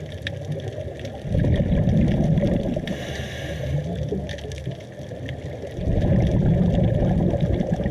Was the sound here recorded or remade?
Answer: recorded